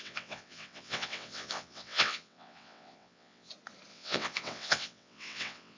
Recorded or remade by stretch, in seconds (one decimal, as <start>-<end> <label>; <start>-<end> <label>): 0.0-3.5 remade; 3.5-3.9 recorded; 3.9-5.8 remade